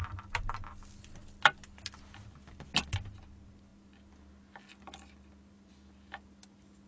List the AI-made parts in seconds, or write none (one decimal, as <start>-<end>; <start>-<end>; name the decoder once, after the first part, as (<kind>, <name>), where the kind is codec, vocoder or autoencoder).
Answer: none